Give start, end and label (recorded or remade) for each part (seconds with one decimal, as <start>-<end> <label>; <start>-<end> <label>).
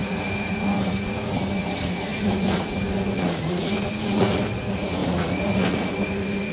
0.0-6.5 remade